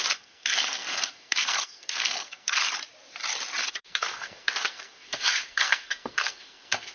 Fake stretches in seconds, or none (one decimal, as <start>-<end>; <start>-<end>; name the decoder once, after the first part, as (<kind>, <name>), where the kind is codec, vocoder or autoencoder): 0.0-2.6 (codec, SNAC); 3.7-6.9